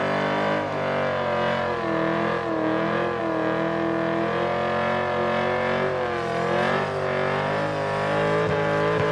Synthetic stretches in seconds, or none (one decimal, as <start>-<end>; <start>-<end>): none